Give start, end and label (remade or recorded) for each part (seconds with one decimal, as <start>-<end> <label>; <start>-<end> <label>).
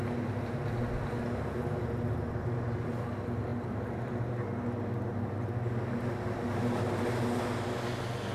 0.0-3.5 recorded; 3.5-4.3 remade; 4.3-8.3 recorded